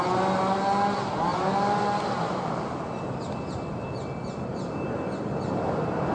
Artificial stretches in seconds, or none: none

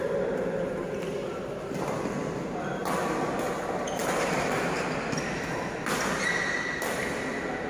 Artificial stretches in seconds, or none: none

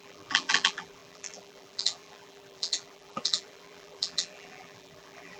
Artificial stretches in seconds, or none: 0.0-5.4 (vocoder, BigVGAN v2)

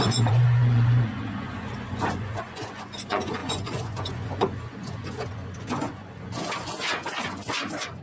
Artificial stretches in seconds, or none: 0.0-8.0 (vocoder, Vocos)

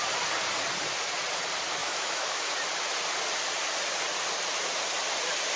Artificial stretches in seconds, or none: 1.8-2.5 (autoencoder, DAC-VAE)

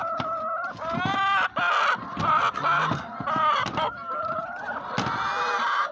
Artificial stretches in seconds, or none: none

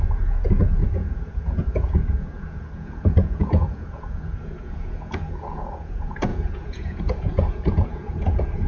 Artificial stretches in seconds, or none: 0.0-8.7 (vocoder, Vocos)